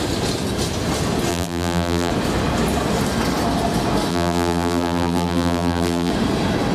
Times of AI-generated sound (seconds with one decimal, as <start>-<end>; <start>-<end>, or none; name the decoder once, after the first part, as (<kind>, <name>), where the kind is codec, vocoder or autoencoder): 1.3-2.1 (vocoder, BigVGAN v2); 4.1-6.1

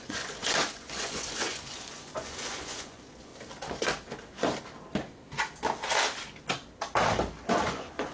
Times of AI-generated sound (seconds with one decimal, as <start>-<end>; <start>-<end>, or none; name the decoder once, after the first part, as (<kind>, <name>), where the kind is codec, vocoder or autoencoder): 0.0-3.3 (vocoder, Vocos); 7.5-8.1